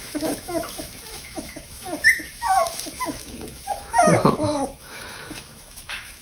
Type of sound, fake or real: fake